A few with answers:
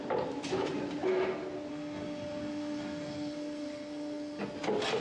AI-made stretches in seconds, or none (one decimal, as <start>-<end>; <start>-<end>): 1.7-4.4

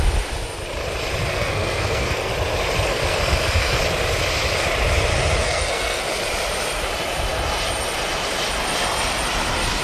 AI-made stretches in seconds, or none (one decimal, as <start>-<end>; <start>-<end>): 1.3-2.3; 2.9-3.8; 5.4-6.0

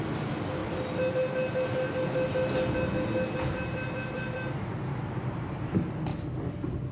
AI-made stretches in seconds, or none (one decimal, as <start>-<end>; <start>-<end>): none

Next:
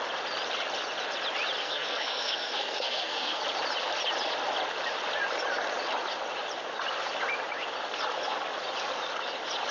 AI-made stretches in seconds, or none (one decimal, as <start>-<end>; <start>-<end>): 1.6-3.4